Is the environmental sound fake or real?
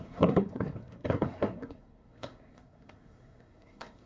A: fake